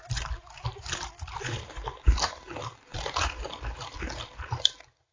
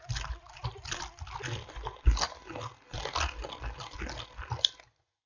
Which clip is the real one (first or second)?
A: second